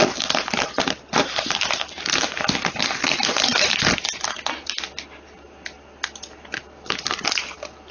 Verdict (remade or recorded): recorded